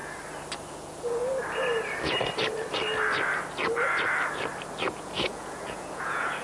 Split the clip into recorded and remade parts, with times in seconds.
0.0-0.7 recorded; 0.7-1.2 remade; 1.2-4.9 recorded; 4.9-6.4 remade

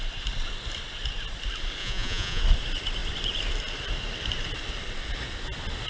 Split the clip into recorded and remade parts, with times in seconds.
0.0-1.8 recorded; 1.8-2.4 remade; 2.4-5.9 recorded

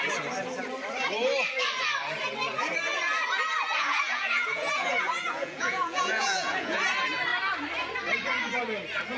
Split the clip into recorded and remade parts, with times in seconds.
0.0-3.8 recorded; 3.8-6.8 remade; 6.8-9.2 recorded

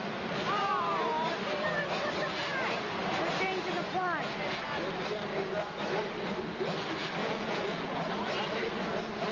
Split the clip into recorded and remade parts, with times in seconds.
0.0-7.2 recorded; 7.2-8.1 remade; 8.1-9.3 recorded

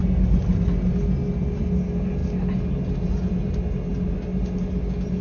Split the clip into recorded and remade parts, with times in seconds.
0.0-5.2 recorded

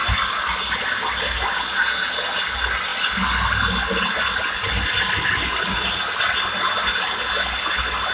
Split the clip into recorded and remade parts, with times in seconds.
0.0-8.1 recorded

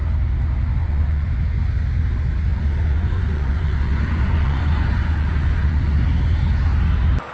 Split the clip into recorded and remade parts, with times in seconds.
0.0-0.8 recorded; 0.8-1.3 remade; 1.3-2.5 recorded; 2.5-6.0 remade; 6.0-7.3 recorded

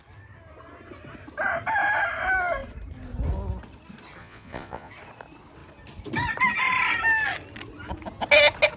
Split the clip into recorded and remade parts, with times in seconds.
0.0-4.2 recorded; 4.2-4.9 remade; 4.9-8.8 recorded